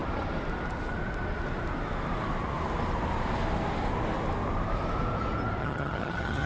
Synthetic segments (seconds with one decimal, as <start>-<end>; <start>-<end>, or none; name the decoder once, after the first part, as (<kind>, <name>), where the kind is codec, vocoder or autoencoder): 5.6-6.5 (vocoder, HiFi-GAN)